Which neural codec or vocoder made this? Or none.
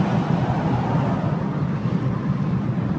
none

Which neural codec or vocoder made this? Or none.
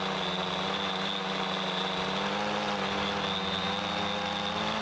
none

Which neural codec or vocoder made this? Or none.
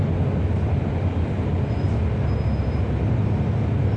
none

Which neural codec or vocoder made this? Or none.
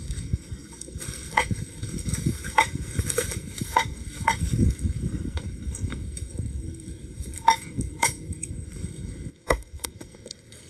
codec, SNAC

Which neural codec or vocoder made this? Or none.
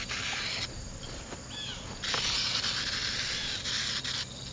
none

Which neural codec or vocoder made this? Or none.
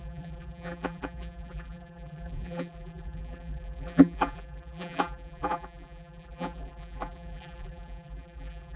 vocoder, BigVGAN v2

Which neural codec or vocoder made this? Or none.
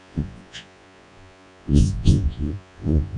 vocoder, Vocos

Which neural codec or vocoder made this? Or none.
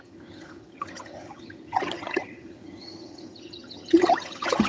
vocoder, HiFi-GAN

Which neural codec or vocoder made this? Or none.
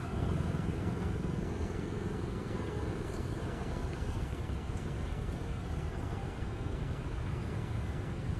codec, SNAC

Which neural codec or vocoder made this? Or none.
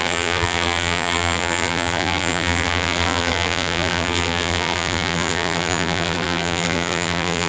vocoder, BigVGAN v2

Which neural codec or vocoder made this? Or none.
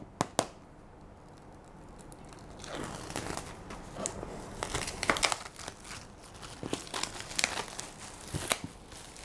none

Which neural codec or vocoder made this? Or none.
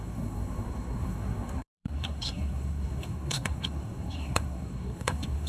codec, SNAC